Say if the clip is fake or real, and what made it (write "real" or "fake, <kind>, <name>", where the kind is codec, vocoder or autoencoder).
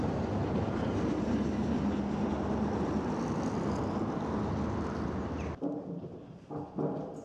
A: real